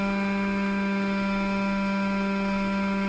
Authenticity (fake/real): fake